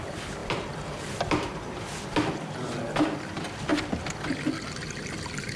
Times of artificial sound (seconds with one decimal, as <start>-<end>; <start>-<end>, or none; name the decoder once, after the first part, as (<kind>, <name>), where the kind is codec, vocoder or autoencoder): none